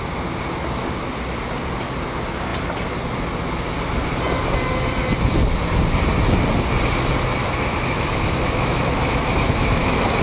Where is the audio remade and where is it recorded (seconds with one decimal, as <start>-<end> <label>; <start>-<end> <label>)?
0.0-7.4 recorded; 7.4-10.2 remade